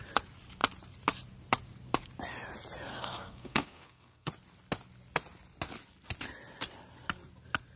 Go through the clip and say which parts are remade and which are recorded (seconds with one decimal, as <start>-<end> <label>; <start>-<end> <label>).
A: 0.0-2.9 recorded; 2.9-4.3 remade; 4.3-7.8 recorded